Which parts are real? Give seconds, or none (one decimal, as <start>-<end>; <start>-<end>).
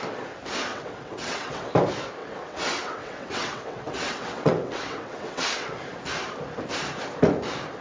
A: 0.0-0.7; 1.7-2.2; 5.8-7.8